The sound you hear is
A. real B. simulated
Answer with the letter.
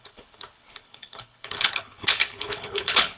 B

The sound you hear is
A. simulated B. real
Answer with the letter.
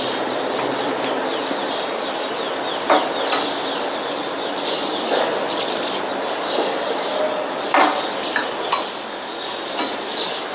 B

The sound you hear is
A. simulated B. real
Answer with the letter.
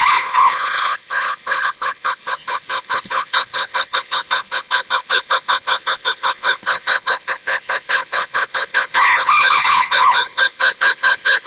A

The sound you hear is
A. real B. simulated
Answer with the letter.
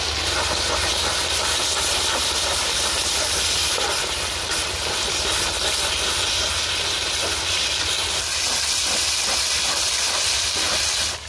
A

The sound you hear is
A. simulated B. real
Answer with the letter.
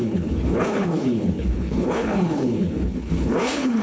A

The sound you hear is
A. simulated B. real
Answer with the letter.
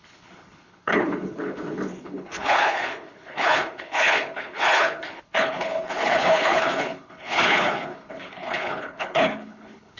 A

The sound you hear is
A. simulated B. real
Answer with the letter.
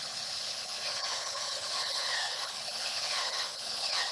A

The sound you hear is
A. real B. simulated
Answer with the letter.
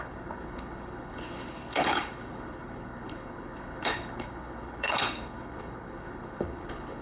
B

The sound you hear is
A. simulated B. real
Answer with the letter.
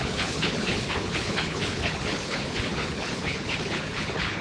A